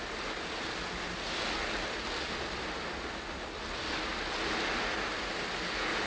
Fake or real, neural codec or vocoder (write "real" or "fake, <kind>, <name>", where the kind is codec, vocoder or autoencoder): real